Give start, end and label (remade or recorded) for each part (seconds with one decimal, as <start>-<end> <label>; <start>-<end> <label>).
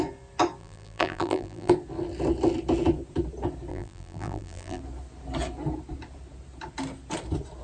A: 0.0-0.6 recorded; 0.6-1.7 remade; 1.7-3.7 recorded; 3.7-4.8 remade; 4.8-7.6 recorded